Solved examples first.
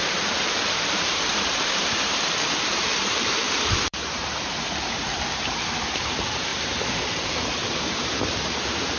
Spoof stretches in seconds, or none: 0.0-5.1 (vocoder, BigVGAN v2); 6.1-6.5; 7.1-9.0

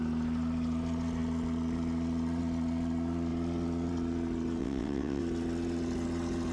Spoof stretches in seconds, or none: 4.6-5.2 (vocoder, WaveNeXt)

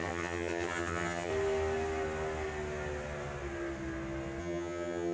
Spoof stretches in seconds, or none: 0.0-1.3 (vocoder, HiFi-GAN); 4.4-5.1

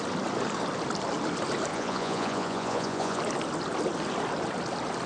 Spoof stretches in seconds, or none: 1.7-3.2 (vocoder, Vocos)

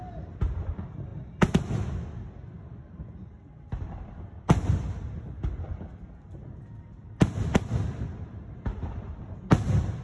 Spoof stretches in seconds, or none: none